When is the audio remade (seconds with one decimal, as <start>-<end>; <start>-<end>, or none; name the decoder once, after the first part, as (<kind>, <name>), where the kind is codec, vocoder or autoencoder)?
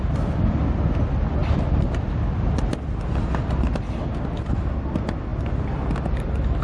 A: none